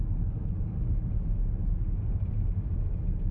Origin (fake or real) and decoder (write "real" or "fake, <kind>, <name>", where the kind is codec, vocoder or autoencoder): real